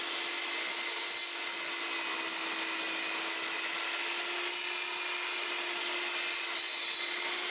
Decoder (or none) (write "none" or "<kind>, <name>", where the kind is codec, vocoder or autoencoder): none